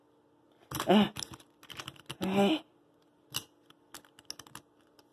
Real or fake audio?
real